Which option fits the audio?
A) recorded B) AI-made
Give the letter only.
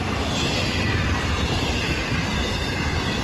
A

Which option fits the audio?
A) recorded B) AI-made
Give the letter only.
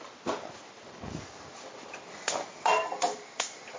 B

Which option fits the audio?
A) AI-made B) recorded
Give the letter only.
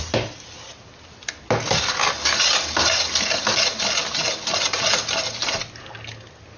B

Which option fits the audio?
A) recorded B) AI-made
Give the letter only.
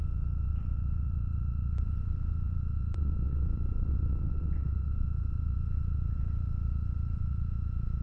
B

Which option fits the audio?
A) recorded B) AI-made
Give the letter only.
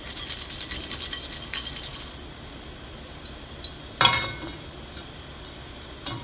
A